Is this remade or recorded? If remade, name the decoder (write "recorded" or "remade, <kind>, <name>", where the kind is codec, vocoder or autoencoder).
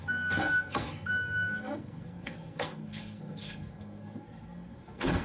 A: remade, codec, SNAC